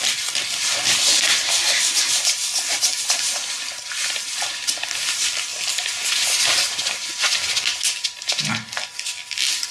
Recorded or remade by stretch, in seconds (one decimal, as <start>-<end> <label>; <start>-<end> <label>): 0.0-9.7 recorded